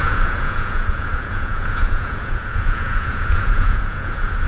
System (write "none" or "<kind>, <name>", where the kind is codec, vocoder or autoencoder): vocoder, Vocos